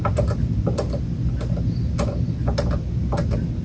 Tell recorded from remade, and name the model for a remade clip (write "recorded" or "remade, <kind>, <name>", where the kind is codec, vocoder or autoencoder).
recorded